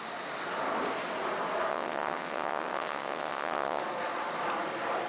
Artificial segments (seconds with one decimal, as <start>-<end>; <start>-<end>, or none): 1.7-3.8